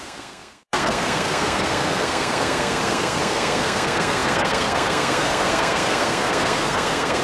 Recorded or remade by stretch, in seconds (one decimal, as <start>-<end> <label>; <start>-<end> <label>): 0.0-7.2 remade